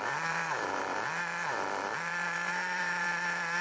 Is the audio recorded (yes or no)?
no